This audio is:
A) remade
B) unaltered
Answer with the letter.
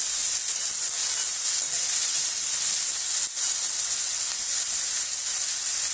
B